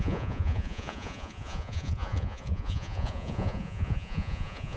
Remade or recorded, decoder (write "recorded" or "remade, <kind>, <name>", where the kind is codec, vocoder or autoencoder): remade, vocoder, Vocos